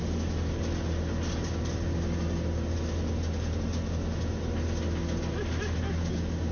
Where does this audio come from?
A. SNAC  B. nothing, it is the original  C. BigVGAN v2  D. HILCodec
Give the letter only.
B